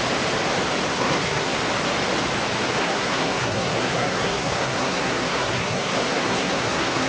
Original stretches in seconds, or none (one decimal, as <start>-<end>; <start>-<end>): 0.0-0.9; 1.6-2.8

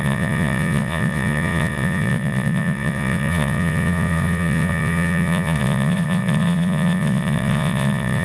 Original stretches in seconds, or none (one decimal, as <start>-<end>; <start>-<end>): none

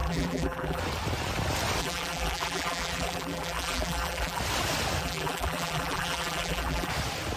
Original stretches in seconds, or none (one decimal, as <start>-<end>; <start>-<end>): 0.8-1.8; 4.4-5.0; 6.9-7.4

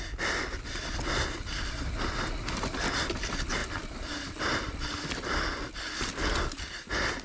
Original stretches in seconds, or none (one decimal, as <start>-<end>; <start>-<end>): 0.0-7.2

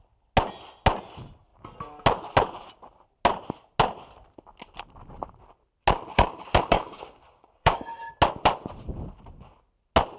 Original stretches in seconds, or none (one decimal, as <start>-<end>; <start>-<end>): 0.0-6.1; 8.1-10.2

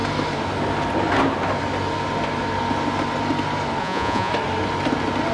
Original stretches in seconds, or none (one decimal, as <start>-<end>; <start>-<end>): 0.0-3.8; 4.3-5.3